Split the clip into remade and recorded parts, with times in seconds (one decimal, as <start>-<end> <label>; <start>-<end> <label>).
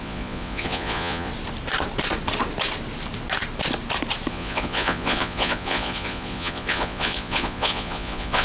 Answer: 0.0-1.3 remade; 1.3-4.3 recorded; 4.3-8.4 remade